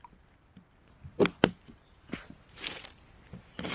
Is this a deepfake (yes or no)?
no